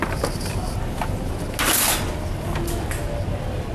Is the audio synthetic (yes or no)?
no